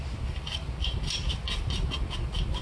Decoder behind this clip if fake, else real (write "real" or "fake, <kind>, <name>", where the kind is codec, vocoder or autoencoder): real